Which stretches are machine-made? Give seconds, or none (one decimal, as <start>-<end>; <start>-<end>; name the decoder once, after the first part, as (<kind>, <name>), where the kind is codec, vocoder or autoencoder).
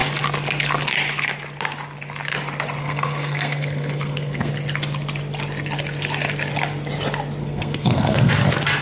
2.8-4.5 (codec, SNAC); 7.4-8.3